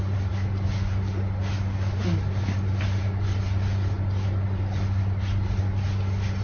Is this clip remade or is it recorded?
recorded